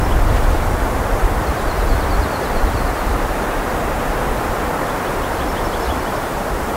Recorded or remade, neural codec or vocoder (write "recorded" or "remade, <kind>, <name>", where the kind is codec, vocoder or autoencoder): remade, vocoder, BigVGAN v2